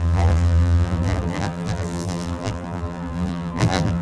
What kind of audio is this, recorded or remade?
remade